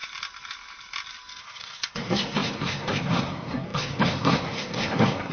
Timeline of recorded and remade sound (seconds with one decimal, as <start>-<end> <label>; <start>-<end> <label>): 0.0-1.4 recorded; 1.4-5.3 remade